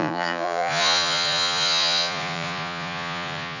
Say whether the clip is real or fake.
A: fake